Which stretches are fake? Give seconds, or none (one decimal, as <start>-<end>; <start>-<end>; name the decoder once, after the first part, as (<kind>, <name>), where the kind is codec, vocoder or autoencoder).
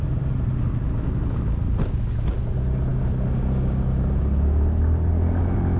none